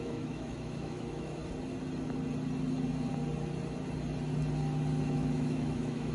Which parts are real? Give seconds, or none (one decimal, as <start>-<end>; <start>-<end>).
1.4-5.1